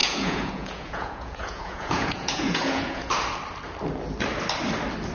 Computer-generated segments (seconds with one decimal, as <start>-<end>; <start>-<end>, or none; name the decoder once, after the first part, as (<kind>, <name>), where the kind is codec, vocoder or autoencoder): 0.0-3.1 (vocoder, Vocos)